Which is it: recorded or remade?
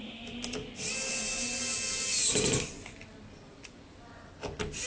recorded